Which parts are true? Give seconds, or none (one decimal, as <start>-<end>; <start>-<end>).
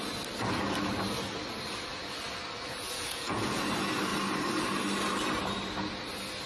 0.0-2.7; 3.6-6.5